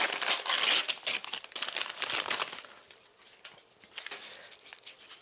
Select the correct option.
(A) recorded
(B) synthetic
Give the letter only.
A